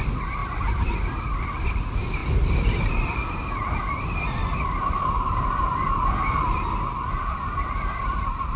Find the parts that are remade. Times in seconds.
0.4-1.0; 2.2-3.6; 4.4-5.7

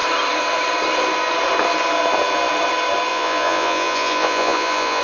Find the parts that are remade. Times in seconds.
3.1-5.0

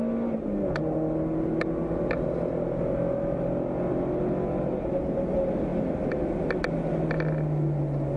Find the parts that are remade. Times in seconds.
none

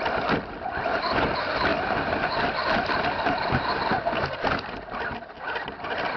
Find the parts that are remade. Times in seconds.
none

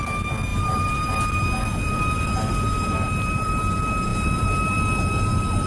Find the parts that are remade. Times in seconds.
0.5-3.5; 4.1-4.8

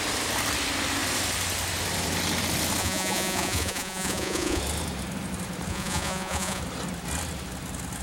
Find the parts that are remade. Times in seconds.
2.8-4.6; 5.7-6.6

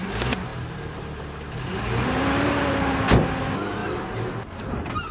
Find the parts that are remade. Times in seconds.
0.5-1.2; 1.7-2.9; 3.8-5.1